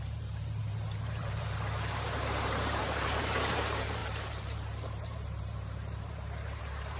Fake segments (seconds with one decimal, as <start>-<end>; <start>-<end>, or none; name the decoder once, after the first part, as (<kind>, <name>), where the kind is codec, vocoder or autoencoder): 0.0-7.0 (vocoder, BigVGAN v2)